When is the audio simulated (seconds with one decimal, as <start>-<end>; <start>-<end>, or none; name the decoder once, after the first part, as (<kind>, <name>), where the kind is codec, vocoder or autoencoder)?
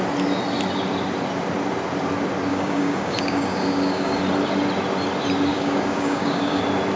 2.5-4.2 (codec, DAC); 5.5-6.6